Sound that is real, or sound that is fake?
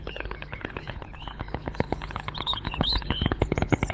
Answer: fake